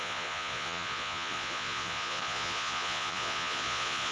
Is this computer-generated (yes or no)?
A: yes